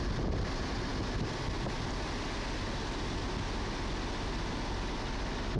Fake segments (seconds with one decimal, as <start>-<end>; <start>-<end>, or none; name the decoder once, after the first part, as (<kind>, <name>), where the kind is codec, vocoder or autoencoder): none